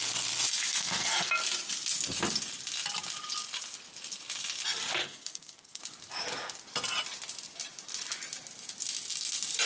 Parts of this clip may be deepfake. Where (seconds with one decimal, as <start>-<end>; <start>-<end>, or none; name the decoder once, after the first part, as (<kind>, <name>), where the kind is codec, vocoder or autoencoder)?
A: 0.7-1.3 (codec, SNAC); 5.0-5.8